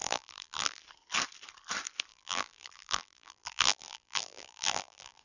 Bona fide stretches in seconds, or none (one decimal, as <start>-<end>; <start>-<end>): 0.8-2.1